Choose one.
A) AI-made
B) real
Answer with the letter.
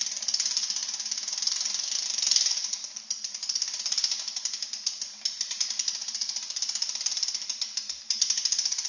B